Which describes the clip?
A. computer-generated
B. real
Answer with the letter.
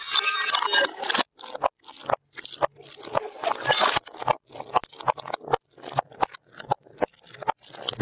B